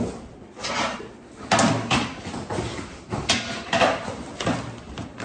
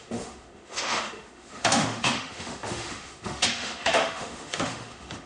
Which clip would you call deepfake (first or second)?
second